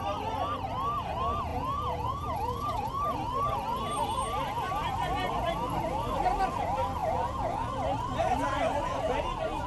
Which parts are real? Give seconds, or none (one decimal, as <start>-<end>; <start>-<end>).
0.0-1.5; 2.9-7.0; 7.7-9.7